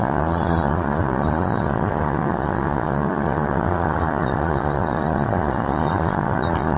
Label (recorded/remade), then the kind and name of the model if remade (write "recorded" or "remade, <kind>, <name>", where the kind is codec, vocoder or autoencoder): remade, vocoder, Vocos